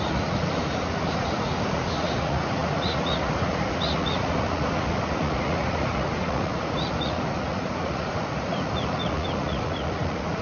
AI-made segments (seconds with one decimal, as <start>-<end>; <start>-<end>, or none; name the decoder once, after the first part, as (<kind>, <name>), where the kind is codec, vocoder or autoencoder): 0.0-10.4 (vocoder, Vocos)